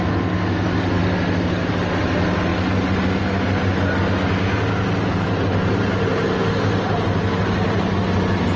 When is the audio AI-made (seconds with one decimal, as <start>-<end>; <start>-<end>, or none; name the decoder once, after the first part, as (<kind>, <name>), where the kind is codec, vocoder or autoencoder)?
none